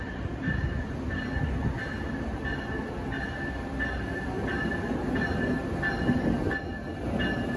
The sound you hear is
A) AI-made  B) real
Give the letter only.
B